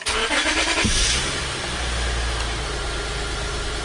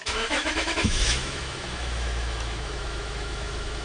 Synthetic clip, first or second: second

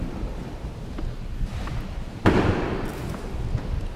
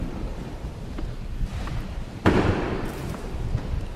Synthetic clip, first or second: second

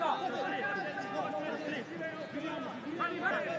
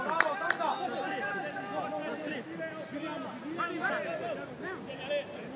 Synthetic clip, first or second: first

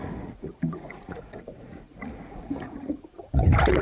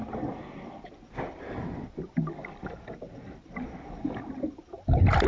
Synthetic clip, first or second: first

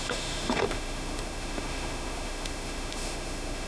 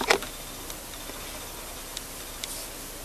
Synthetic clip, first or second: first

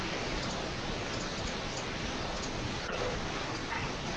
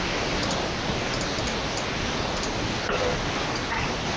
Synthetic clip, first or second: first